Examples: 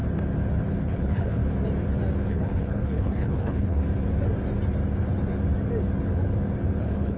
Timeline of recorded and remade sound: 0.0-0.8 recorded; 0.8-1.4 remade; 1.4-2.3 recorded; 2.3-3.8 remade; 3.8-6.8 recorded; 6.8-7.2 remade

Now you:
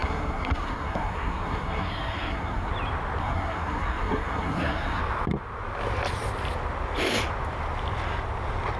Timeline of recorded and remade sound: 0.0-2.7 remade; 2.7-3.2 recorded; 3.2-5.0 remade; 5.0-8.8 recorded

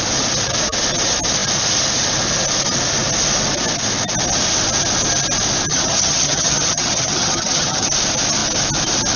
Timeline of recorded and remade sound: 0.0-5.7 recorded; 5.7-7.9 remade; 7.9-9.2 recorded

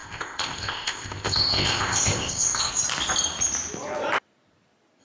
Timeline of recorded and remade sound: 0.0-2.7 remade; 2.7-5.0 recorded